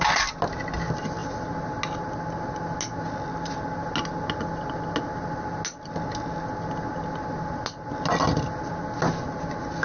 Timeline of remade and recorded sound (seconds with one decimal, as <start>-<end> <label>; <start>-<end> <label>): 0.0-9.8 recorded